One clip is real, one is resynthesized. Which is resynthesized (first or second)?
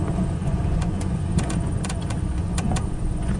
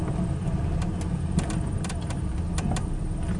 first